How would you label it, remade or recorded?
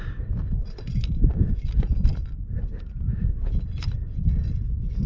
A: recorded